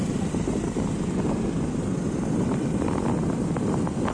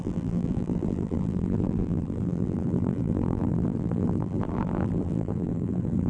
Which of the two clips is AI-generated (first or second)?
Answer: second